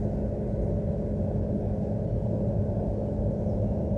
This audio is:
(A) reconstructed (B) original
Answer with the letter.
B